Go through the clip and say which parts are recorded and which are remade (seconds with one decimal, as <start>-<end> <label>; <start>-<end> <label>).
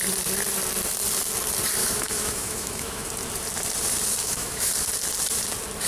0.0-1.8 recorded; 1.8-3.1 remade; 3.1-4.2 recorded; 4.2-4.7 remade; 4.7-5.9 recorded